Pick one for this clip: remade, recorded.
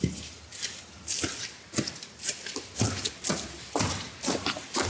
recorded